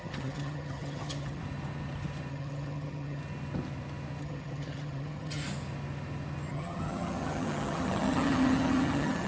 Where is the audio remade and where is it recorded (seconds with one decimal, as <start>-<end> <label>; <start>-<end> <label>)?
0.0-1.4 remade; 1.4-2.3 recorded; 2.3-3.2 remade; 3.2-4.2 recorded; 4.2-5.4 remade; 5.4-6.5 recorded; 6.5-9.3 remade